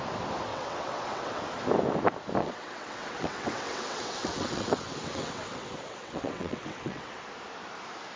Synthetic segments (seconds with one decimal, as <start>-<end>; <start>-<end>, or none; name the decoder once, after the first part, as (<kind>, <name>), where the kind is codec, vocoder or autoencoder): 0.5-1.4 (vocoder, WaveNeXt); 2.4-7.1